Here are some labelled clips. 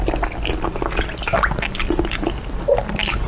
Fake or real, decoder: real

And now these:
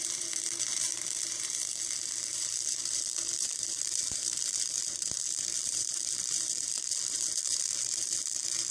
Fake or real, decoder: fake, vocoder, BigVGAN v2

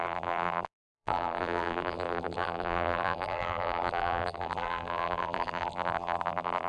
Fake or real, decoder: fake, vocoder, BigVGAN v2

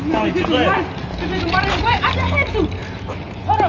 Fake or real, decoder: real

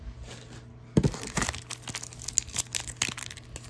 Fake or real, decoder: real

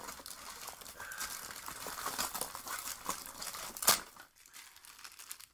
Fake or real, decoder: real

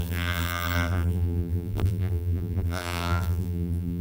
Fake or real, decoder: fake, vocoder, BigVGAN v2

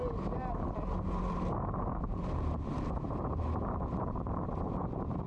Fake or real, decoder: fake, vocoder, BigVGAN v2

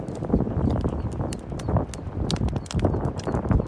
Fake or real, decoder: real